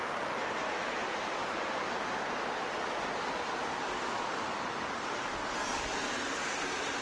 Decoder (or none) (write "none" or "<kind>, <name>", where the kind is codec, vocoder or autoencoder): none